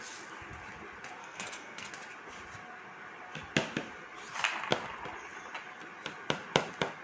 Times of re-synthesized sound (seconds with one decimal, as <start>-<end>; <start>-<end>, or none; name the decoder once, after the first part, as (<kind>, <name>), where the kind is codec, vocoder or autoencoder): 1.2-1.9 (codec, SNAC)